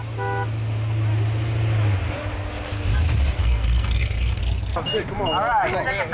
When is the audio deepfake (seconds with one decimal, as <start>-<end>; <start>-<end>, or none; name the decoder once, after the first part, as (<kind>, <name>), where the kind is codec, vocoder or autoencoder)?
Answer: 3.4-4.4 (codec, SNAC)